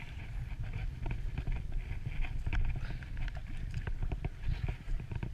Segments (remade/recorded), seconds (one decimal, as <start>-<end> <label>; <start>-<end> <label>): 0.0-0.8 remade; 0.8-3.1 recorded; 3.1-4.0 remade; 4.0-4.8 recorded; 4.8-5.3 remade